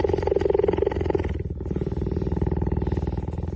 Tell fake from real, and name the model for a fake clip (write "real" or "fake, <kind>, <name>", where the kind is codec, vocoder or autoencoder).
real